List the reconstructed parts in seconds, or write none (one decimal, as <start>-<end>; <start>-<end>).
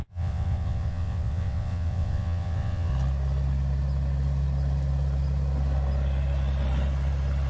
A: 0.0-2.9